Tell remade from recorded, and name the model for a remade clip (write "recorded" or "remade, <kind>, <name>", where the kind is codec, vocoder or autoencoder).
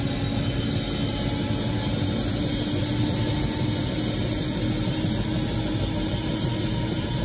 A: recorded